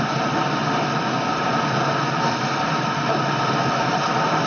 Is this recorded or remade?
recorded